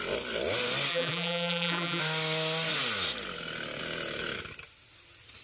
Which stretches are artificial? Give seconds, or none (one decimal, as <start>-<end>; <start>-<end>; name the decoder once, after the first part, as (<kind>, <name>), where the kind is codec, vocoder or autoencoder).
0.9-2.0 (vocoder, BigVGAN v2)